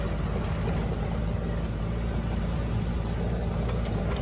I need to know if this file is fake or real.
real